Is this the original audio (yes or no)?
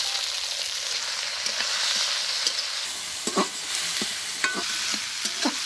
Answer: yes